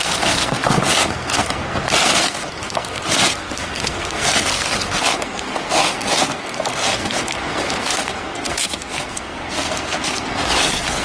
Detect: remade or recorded remade